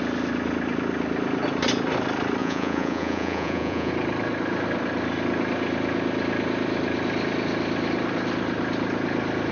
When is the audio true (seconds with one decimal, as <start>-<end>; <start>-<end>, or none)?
0.0-2.4; 3.9-9.5